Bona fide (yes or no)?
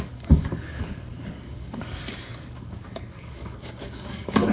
no